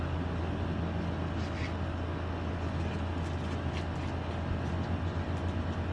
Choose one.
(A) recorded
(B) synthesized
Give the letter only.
A